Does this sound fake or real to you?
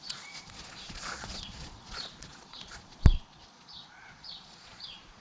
fake